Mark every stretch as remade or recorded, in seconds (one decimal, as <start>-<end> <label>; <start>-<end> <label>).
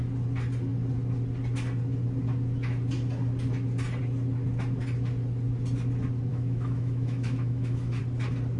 0.0-6.3 recorded; 6.3-8.0 remade; 8.0-8.6 recorded